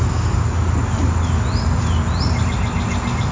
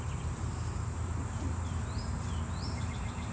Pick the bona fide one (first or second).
first